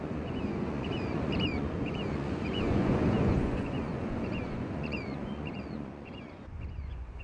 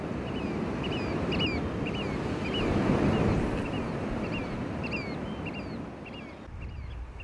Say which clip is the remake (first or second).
first